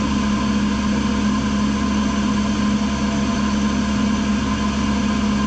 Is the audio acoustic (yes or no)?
yes